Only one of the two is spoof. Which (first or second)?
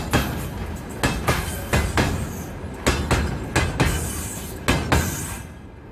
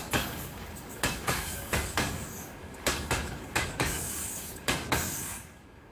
second